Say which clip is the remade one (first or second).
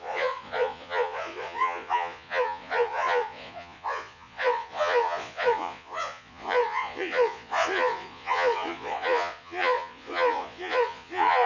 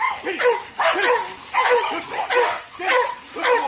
first